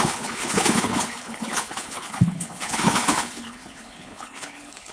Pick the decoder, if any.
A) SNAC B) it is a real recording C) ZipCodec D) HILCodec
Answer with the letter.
D